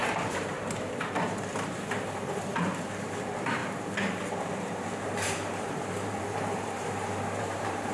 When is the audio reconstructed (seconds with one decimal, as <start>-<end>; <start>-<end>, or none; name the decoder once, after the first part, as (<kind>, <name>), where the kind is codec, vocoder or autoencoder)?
0.0-7.9 (vocoder, BigVGAN v2)